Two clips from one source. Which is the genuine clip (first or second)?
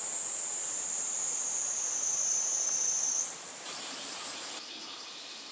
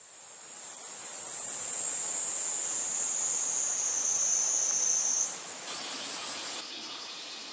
second